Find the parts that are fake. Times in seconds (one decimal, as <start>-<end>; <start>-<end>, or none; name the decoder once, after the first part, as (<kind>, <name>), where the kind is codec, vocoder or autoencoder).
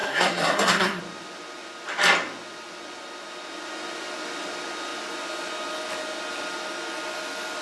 0.0-1.0 (codec, SNAC)